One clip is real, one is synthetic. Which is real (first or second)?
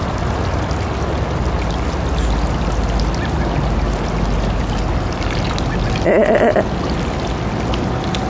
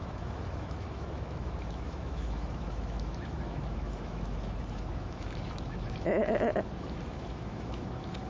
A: first